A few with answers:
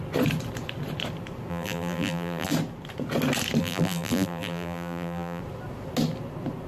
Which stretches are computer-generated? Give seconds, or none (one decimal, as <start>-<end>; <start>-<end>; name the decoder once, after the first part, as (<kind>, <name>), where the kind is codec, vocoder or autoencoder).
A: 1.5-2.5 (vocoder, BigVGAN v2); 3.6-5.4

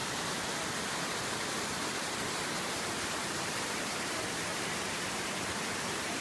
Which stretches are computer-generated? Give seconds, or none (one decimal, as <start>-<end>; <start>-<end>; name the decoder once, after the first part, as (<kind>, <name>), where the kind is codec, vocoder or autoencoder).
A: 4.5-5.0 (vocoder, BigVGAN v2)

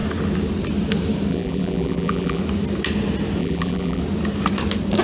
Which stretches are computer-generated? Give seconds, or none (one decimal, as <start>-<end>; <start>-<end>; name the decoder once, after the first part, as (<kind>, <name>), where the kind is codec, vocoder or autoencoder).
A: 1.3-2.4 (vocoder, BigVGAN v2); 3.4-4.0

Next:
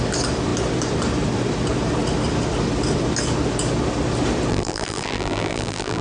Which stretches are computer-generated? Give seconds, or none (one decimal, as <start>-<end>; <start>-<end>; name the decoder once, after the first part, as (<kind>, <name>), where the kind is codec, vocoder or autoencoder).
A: 4.5-6.0 (vocoder, BigVGAN v2)